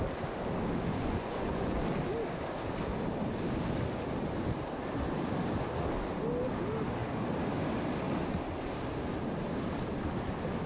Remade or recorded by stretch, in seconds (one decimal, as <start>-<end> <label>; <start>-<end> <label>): 0.0-0.9 recorded; 0.9-1.8 remade; 1.8-10.7 recorded